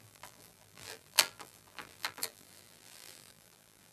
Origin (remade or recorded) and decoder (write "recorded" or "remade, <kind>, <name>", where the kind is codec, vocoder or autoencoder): remade, vocoder, BigVGAN v2